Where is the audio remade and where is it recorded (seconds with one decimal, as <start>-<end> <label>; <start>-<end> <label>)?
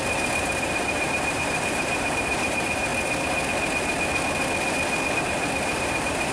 0.0-2.9 remade; 2.9-5.1 recorded; 5.1-6.3 remade